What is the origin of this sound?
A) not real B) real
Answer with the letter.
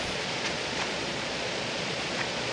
A